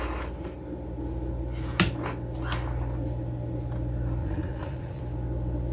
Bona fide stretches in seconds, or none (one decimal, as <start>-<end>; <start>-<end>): 0.0-4.2; 5.0-5.7

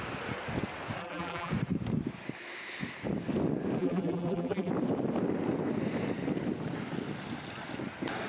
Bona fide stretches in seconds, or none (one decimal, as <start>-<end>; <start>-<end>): 0.0-1.0; 1.5-3.8; 4.7-8.3

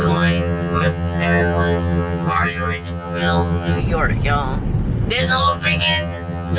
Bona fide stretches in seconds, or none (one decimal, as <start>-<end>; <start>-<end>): 3.8-5.2

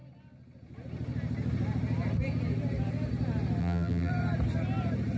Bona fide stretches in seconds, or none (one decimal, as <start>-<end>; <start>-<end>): 0.0-3.6; 4.1-5.2

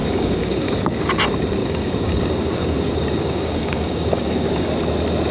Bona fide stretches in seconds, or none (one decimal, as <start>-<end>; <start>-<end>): 1.1-1.6; 4.8-5.3

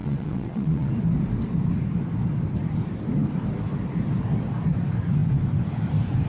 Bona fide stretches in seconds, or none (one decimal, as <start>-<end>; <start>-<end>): 0.9-6.3

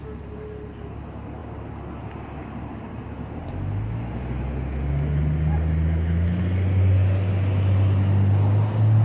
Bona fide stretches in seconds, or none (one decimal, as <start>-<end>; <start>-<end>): 0.0-9.0